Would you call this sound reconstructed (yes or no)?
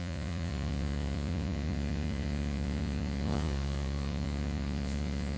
yes